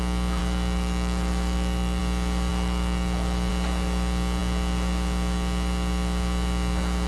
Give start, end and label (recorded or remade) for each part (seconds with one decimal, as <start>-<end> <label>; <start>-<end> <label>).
0.0-0.4 recorded; 0.4-2.0 remade; 2.0-2.5 recorded; 2.5-3.5 remade; 3.5-7.1 recorded

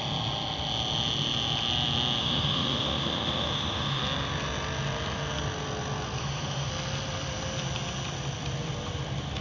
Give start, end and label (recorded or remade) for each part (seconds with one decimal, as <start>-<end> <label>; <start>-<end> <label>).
0.0-2.2 recorded; 2.2-4.0 remade; 4.0-6.2 recorded; 6.2-6.7 remade; 6.7-9.4 recorded

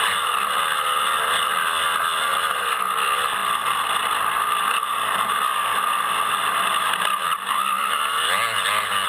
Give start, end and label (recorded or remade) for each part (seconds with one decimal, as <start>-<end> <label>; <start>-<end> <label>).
0.0-9.1 recorded

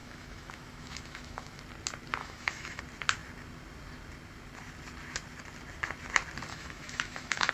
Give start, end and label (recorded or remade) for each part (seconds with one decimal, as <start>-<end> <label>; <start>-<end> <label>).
0.0-1.6 remade; 1.6-2.2 recorded; 2.2-2.8 remade; 2.8-6.5 recorded; 6.5-7.5 remade

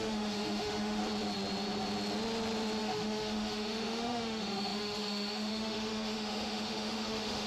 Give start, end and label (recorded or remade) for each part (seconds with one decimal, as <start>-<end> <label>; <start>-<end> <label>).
0.0-1.0 remade; 1.0-2.8 recorded; 2.8-7.5 remade

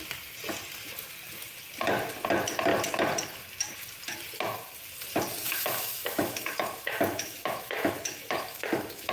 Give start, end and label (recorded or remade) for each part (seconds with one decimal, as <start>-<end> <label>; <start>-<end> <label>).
0.0-5.4 recorded; 5.4-9.1 remade